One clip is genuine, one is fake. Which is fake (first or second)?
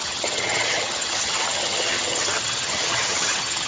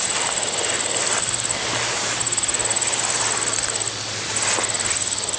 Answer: first